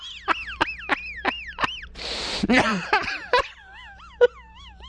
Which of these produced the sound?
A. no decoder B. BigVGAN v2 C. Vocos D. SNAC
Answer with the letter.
A